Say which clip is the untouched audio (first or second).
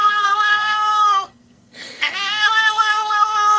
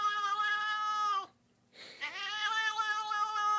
second